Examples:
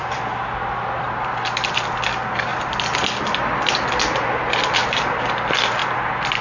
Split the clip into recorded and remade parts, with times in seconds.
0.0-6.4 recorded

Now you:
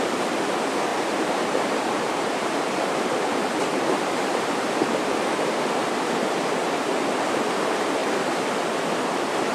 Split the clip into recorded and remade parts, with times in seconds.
0.0-0.9 recorded; 0.9-5.8 remade; 5.8-9.5 recorded

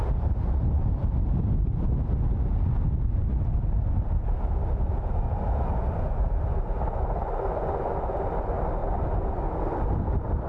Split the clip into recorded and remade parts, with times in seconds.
0.0-10.5 recorded